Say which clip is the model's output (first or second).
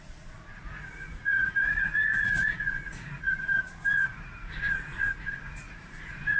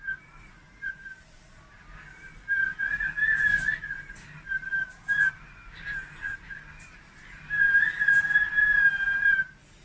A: first